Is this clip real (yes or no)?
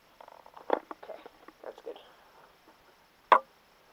yes